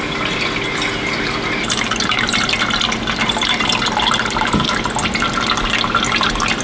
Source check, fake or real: real